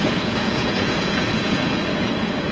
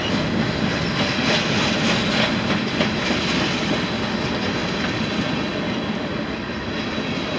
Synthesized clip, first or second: first